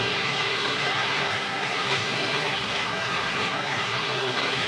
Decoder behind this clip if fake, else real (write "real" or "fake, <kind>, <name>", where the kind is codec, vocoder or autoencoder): fake, codec, SNAC